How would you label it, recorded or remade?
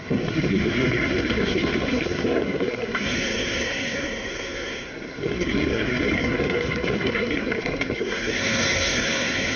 remade